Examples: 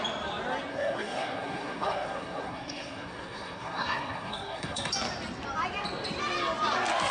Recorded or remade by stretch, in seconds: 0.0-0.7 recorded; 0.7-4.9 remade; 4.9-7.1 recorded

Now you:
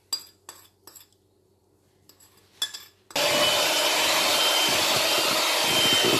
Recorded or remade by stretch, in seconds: 0.0-6.2 recorded

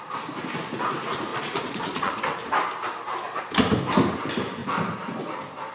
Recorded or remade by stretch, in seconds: 0.0-1.3 recorded; 1.3-2.2 remade; 2.2-5.7 recorded

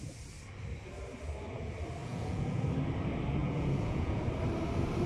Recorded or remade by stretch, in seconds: 0.0-2.0 recorded; 2.0-2.6 remade; 2.6-3.4 recorded; 3.4-4.2 remade; 4.2-5.1 recorded

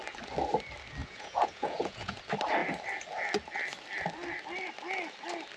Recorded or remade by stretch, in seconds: 0.0-1.0 recorded; 1.0-2.2 remade; 2.2-5.6 recorded